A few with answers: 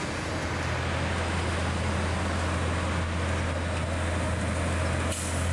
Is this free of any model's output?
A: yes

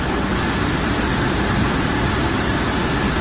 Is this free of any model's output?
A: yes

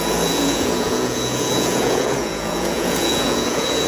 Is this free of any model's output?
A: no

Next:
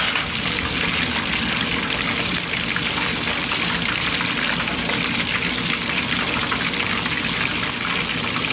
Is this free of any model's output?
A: yes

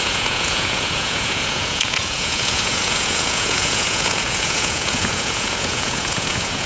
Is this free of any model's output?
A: no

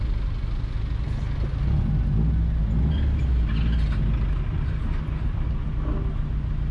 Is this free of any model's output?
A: yes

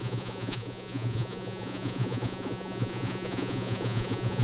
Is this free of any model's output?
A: no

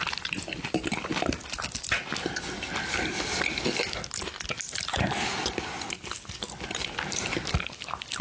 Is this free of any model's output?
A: yes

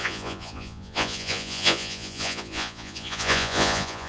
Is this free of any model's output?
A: no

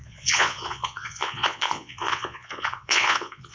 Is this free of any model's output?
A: no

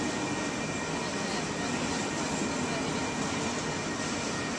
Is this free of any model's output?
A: yes